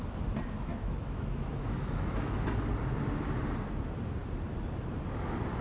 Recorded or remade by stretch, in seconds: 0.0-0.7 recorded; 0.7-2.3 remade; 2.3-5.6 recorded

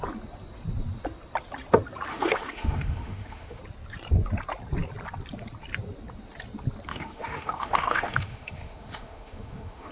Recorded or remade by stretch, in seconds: 0.0-2.1 recorded; 2.1-3.6 remade; 3.6-6.9 recorded; 6.9-9.9 remade